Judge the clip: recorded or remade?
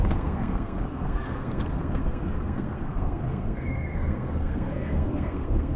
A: remade